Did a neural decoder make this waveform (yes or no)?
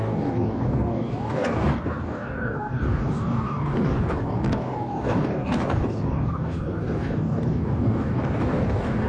yes